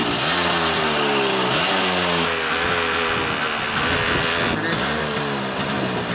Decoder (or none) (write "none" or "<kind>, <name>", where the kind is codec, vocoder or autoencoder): none